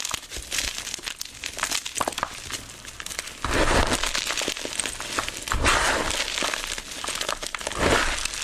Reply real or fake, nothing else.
real